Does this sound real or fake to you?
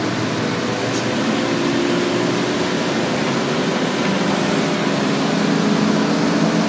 real